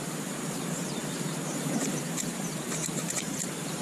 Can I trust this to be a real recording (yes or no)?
no